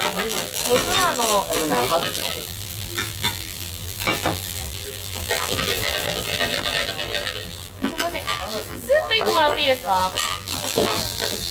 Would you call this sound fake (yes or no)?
yes